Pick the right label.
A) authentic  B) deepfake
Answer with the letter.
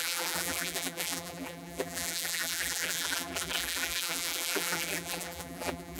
B